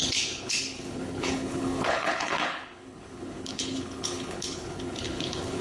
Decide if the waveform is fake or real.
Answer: fake